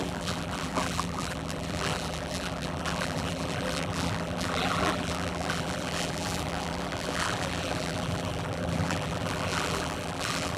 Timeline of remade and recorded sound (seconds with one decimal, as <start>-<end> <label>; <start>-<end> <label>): 0.0-10.6 remade